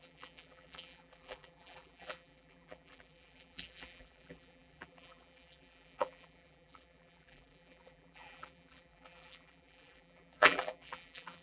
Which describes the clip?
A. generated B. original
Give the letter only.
A